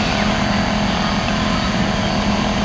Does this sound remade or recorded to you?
recorded